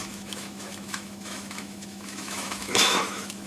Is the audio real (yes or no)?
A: no